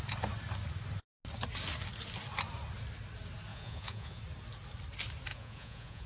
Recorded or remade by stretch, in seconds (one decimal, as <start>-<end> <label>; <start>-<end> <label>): 0.0-3.5 recorded; 3.5-4.2 remade; 4.2-5.3 recorded; 5.3-6.1 remade